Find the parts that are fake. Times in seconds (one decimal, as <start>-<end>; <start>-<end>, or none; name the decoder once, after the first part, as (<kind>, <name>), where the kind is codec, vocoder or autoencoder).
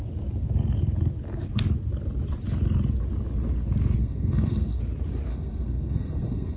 4.0-4.8 (codec, SNAC); 5.3-6.6